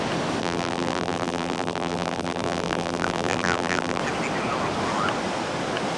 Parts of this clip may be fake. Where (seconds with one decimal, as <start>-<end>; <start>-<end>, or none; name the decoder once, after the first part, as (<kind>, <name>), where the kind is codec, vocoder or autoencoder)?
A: 0.4-4.0 (vocoder, BigVGAN v2)